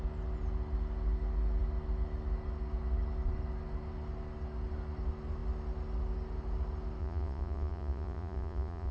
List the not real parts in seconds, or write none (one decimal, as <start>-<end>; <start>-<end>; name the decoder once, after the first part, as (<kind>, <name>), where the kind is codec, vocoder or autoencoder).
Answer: 7.0-8.9 (vocoder, Vocos)